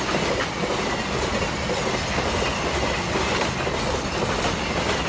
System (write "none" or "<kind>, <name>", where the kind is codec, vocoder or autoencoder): none